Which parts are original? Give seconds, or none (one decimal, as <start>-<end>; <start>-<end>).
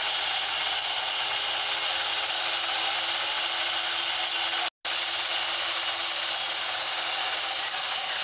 0.0-8.2